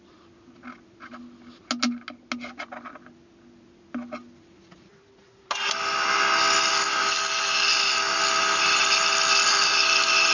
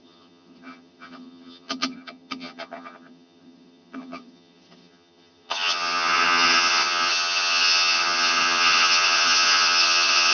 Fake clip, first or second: second